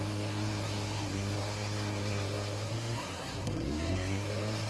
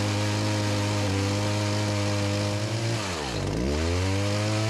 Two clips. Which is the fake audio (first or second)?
first